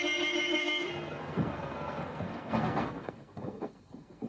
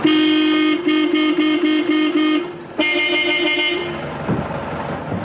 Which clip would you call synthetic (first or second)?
first